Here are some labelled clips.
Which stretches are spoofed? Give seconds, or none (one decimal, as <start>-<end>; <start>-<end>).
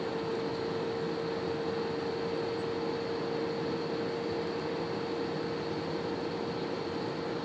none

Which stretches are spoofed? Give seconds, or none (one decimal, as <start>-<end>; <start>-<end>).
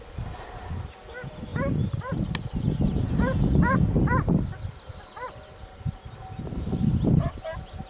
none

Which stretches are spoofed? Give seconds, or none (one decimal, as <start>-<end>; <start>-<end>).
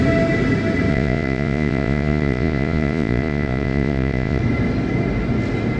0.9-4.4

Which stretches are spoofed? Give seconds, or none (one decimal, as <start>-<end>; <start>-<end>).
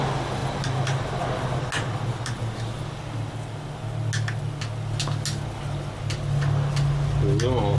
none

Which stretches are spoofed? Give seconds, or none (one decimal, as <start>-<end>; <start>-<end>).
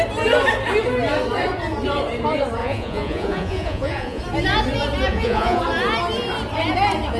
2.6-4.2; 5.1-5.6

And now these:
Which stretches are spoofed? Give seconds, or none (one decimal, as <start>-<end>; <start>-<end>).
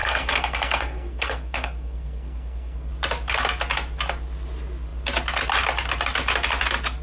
0.0-2.9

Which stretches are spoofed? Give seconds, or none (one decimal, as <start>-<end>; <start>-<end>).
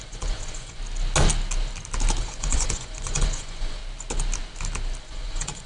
0.0-0.8; 2.2-3.8; 5.0-5.7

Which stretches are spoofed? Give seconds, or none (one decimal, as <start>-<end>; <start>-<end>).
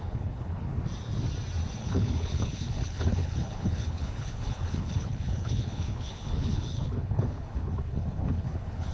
0.0-0.7; 1.8-8.9